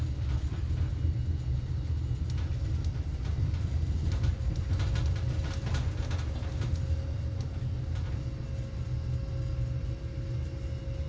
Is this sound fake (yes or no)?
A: no